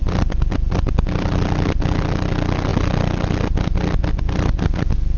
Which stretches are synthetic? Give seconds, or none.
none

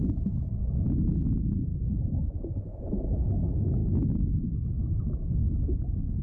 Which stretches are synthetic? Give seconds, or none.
1.7-2.8 (autoencoder, DAC-VAE); 3.8-6.2

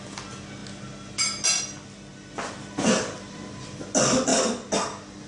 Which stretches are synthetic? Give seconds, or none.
none

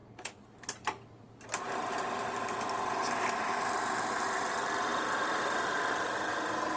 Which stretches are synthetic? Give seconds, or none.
none

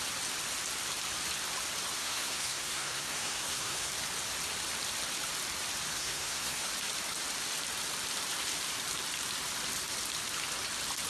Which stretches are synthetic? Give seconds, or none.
2.0-3.9 (codec, SNAC); 5.9-6.7

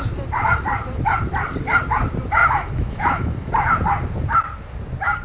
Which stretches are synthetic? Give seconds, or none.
2.4-3.5 (autoencoder, DAC-VAE)

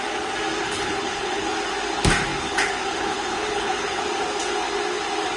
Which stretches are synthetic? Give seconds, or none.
0.6-1.5 (codec, HILCodec); 2.3-4.1